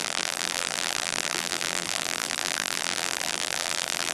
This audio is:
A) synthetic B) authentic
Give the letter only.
A